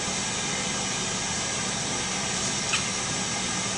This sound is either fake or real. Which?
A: real